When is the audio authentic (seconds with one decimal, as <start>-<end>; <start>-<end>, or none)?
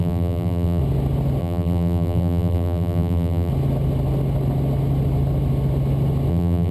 0.8-1.4; 3.5-6.3